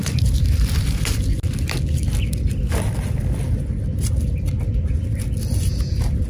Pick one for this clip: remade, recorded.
recorded